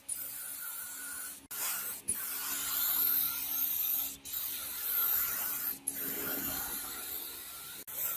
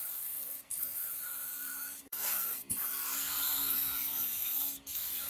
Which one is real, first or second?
first